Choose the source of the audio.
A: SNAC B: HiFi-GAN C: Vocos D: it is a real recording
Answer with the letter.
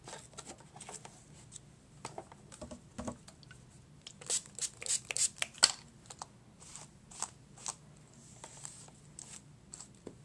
D